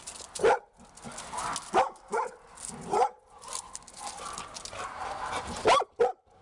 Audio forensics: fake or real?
real